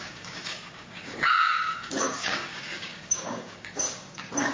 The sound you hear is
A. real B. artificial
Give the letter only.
B